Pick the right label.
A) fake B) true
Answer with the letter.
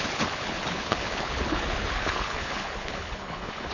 A